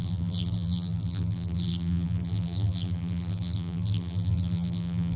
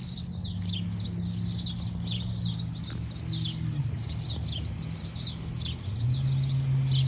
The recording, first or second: second